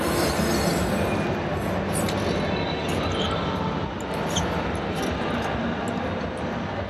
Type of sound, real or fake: real